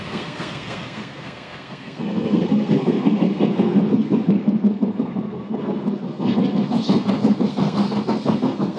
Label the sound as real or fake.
fake